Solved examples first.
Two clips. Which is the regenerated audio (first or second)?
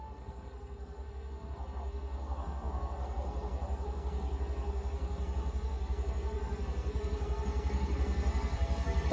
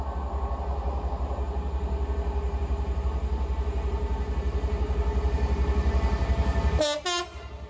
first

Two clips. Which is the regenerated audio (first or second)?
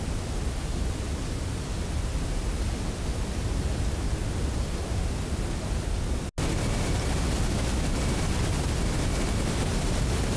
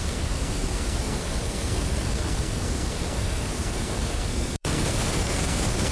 second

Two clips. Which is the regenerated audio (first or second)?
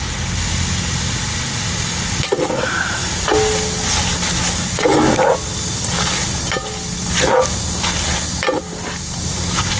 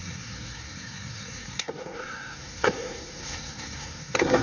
second